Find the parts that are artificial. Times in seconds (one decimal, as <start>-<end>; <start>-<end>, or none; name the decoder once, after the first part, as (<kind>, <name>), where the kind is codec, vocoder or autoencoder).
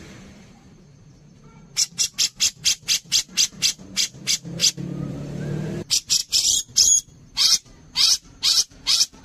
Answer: 0.0-2.3 (vocoder, BigVGAN v2); 3.5-4.6; 5.1-9.2